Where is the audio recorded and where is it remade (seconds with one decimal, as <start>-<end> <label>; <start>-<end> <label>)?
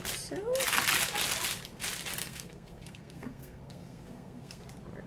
0.0-2.2 recorded; 2.2-4.6 remade; 4.6-5.1 recorded